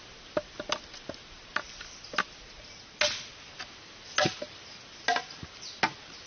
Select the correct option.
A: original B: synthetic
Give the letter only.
A